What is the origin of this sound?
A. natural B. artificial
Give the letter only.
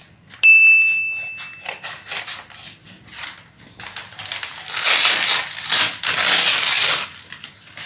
A